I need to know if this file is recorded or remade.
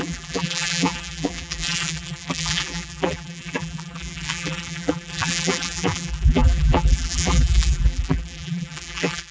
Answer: remade